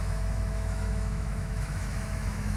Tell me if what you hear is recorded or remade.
remade